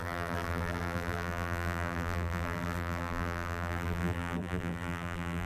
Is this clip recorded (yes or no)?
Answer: no